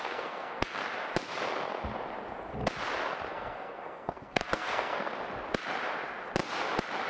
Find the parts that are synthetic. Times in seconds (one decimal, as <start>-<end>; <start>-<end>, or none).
0.0-0.8; 3.3-5.1